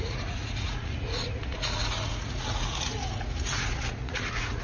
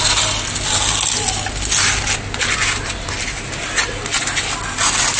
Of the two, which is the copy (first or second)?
first